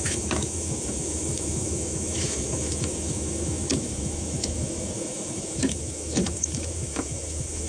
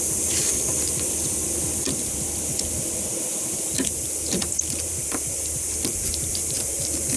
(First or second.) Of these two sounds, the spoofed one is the first